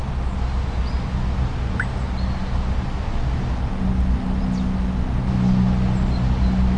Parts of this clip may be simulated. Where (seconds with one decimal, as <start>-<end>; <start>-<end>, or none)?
none